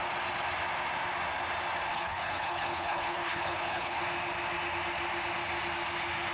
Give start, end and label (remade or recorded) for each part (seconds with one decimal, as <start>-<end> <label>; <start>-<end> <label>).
0.0-1.9 recorded; 1.9-4.0 remade; 4.0-6.3 recorded